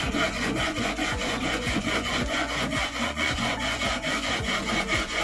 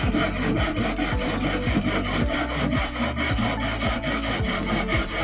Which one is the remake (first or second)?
first